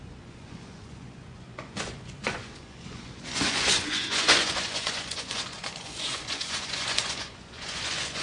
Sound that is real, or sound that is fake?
fake